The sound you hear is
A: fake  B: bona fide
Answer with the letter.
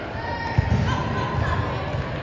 B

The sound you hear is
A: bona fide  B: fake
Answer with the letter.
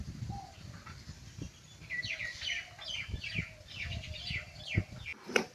A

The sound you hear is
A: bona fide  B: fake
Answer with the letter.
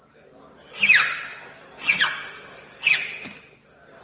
A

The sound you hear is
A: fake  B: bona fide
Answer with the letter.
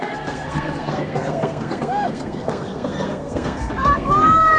A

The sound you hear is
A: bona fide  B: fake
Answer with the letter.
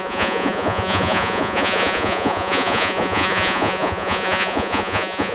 B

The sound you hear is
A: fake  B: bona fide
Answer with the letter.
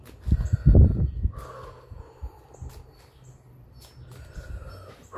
B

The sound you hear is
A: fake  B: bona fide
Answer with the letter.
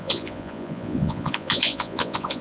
A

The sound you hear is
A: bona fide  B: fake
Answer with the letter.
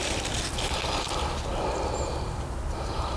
A